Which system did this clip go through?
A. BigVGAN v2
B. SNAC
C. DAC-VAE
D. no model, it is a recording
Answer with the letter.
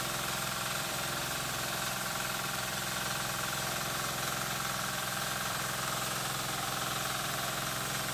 A